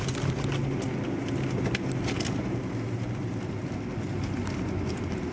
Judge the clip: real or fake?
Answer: real